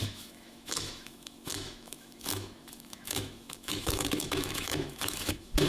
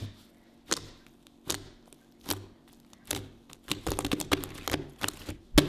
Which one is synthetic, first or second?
first